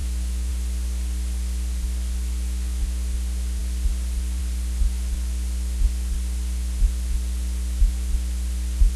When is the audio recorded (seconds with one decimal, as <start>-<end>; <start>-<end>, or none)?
0.5-9.0